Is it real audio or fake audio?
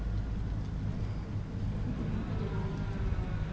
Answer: real